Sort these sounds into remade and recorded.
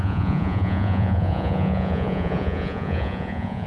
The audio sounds remade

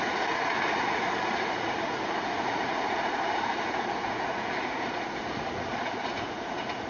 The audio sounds remade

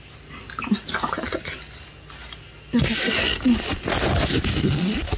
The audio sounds recorded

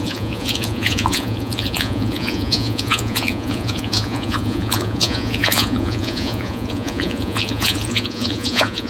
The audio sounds remade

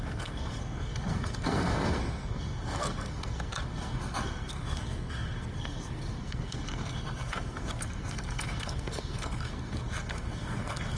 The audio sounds remade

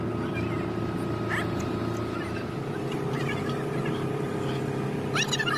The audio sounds recorded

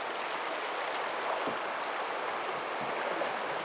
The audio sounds recorded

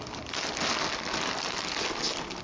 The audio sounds recorded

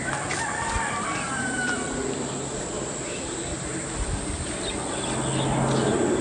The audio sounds recorded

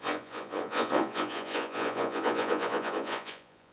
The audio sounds remade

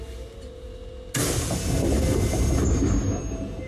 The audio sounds recorded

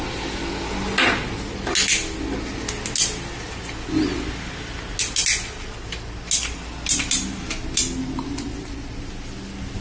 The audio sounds recorded